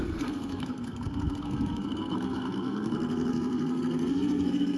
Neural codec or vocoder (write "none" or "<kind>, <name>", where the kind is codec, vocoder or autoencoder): codec, SNAC